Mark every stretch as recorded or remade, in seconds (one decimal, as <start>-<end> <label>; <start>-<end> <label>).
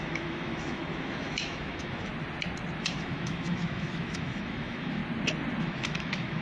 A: 0.0-2.1 remade; 2.1-2.8 recorded; 2.8-5.0 remade; 5.0-5.6 recorded; 5.6-6.4 remade